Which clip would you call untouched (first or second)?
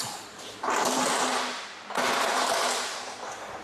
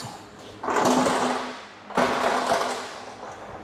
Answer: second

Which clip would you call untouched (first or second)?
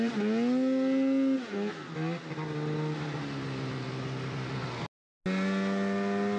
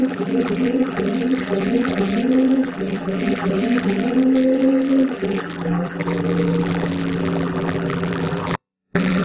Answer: first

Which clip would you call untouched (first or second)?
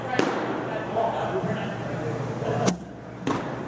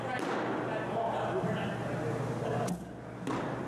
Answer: second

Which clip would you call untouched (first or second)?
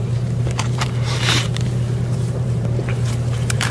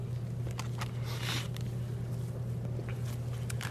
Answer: second